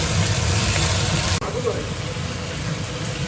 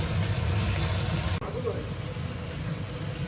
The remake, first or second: first